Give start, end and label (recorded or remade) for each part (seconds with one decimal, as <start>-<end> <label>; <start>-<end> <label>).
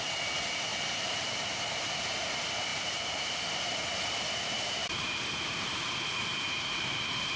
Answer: 0.0-0.7 recorded; 0.7-1.5 remade; 1.5-2.7 recorded; 2.7-3.8 remade; 3.8-4.8 recorded; 4.8-5.8 remade; 5.8-7.4 recorded